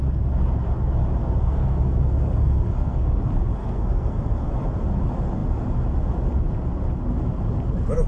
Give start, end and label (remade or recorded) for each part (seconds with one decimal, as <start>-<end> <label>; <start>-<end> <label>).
0.0-1.2 recorded; 1.2-2.0 remade; 2.0-2.4 recorded; 2.4-3.2 remade; 3.2-3.6 recorded; 3.6-4.5 remade; 4.5-8.1 recorded